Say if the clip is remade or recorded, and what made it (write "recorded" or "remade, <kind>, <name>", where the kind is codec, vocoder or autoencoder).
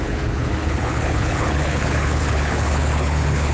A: remade, codec, HILCodec